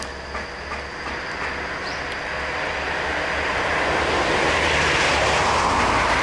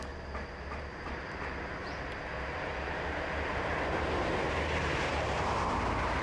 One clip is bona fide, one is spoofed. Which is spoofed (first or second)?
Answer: second